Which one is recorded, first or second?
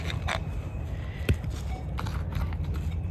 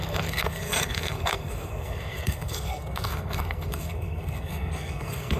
first